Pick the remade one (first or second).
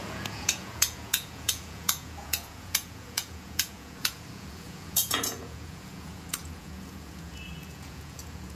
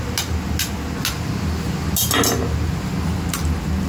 first